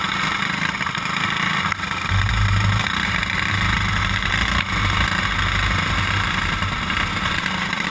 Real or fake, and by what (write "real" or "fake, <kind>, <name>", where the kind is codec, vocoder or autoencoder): real